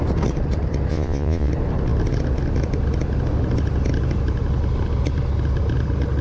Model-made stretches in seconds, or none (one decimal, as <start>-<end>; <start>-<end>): 0.9-1.5